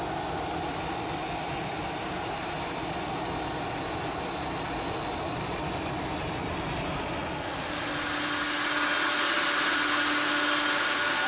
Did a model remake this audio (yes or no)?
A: no